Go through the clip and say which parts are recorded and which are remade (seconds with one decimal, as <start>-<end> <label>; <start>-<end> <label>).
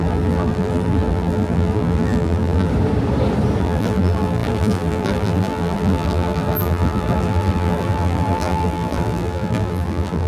0.0-2.7 remade; 2.7-3.6 recorded; 3.6-10.3 remade